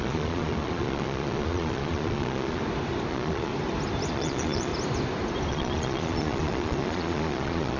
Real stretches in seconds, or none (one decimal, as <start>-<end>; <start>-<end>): 2.6-3.1; 3.5-4.1; 4.7-5.5